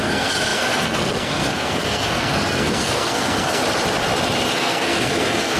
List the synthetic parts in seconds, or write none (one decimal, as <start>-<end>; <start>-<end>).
0.0-3.6; 4.5-5.6